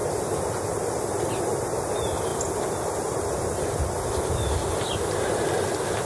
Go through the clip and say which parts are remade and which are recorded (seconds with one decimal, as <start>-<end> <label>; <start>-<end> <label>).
0.0-6.1 recorded